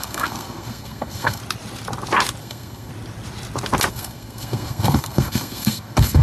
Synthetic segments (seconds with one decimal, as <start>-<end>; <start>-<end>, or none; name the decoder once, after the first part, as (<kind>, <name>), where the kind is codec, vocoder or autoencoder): 0.0-1.4 (codec, SNAC); 2.4-2.9; 3.9-6.2